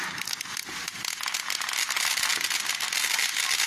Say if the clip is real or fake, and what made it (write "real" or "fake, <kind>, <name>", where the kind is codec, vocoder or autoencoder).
real